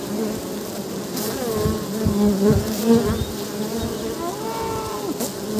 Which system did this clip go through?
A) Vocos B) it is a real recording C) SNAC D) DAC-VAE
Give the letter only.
B